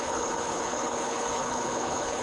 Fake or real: fake